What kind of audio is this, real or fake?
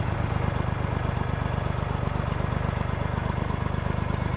real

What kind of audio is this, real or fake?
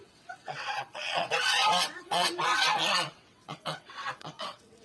fake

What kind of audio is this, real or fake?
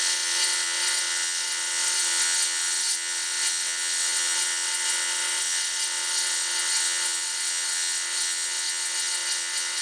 fake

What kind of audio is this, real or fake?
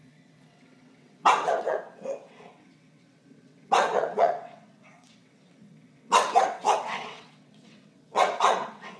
fake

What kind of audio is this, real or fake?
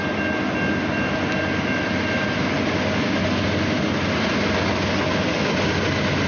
real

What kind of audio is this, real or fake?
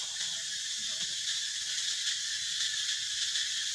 real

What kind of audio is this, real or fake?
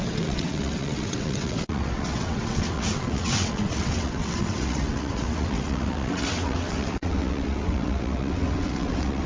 fake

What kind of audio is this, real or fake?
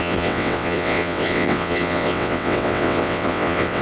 fake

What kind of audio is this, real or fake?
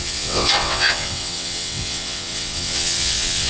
fake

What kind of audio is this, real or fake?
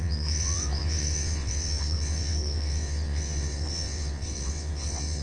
fake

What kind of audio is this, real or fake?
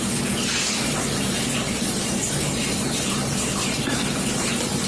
real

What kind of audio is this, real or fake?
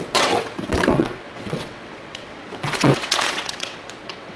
fake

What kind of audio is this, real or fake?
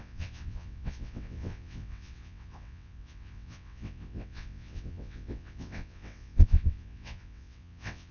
fake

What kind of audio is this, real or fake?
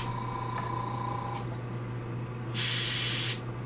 real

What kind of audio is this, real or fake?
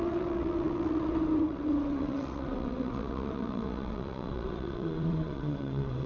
fake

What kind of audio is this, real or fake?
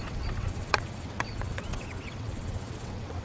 fake